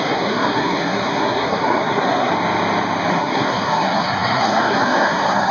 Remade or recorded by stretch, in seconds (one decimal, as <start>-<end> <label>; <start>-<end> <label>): 0.0-2.3 remade; 2.3-3.1 recorded; 3.1-5.5 remade